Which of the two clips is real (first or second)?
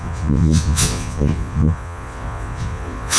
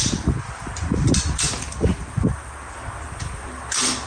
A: second